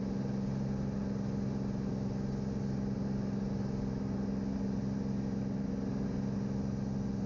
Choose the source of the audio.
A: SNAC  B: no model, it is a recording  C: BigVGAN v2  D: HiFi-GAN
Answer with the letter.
B